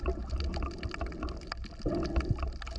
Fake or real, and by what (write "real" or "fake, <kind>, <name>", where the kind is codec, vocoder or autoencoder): real